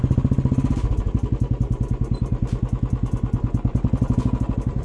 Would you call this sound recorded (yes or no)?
yes